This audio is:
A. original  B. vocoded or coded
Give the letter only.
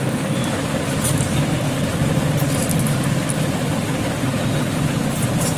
A